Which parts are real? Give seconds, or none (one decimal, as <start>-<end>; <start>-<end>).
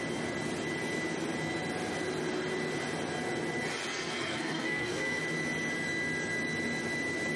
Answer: 0.0-3.9; 5.2-7.4